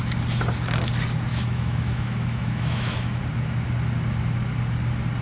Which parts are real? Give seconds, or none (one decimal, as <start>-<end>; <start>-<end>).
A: 0.0-1.3; 3.2-5.2